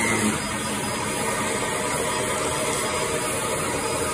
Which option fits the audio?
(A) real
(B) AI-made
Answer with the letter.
A